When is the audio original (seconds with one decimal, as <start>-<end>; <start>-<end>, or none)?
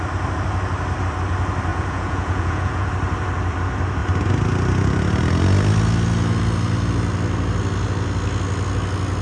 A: 0.0-1.7; 2.9-9.2